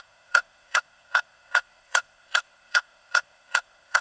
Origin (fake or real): fake